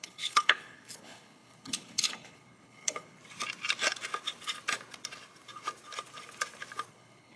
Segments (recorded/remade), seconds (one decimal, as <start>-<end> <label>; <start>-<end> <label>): 0.0-3.2 remade; 3.2-6.9 recorded; 6.9-7.4 remade